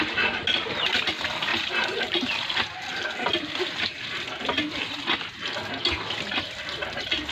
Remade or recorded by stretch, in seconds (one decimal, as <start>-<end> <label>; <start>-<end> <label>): 0.0-1.5 recorded; 1.5-2.4 remade; 2.4-7.3 recorded